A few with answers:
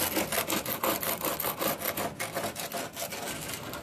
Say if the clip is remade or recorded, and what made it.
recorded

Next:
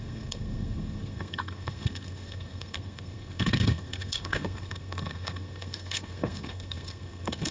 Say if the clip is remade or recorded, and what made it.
remade, codec, SNAC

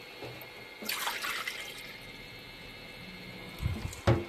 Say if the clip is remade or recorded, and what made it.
recorded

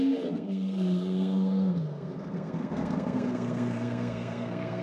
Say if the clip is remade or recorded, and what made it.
remade, codec, SNAC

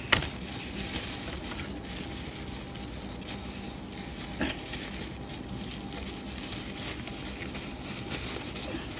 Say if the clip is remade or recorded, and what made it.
recorded